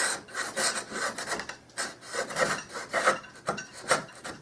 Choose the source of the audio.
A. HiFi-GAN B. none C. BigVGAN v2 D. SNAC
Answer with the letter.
B